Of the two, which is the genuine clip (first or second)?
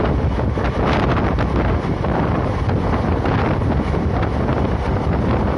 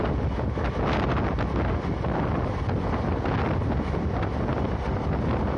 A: second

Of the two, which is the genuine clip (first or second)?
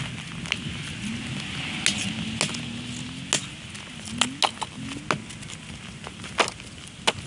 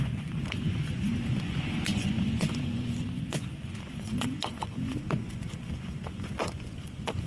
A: first